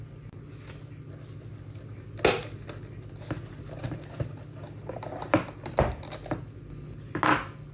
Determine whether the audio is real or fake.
real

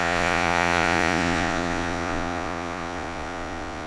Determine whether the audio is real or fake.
fake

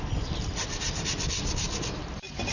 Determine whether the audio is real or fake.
real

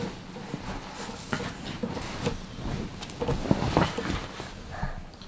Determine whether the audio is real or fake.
real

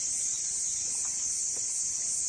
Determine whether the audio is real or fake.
real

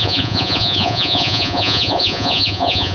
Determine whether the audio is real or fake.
fake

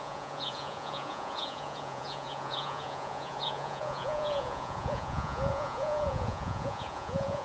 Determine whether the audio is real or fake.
fake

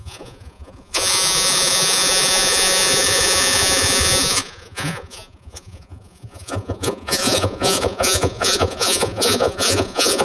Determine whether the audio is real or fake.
fake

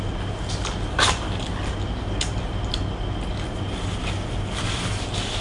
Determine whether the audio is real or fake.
real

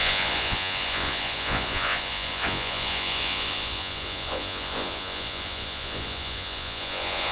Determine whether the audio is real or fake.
fake